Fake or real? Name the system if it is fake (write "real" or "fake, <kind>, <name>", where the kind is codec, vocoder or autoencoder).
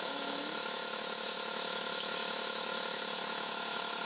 fake, autoencoder, DAC-VAE